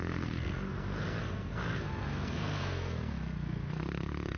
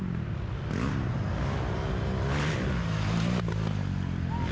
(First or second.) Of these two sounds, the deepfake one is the first